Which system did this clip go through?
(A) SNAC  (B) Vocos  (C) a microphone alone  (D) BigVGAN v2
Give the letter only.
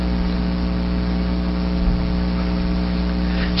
C